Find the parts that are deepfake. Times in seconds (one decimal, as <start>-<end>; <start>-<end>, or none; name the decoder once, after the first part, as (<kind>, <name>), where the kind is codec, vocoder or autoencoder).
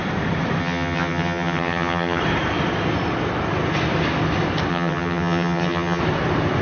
0.6-2.2 (vocoder, HiFi-GAN); 4.7-6.0